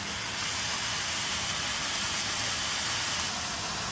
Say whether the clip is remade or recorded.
recorded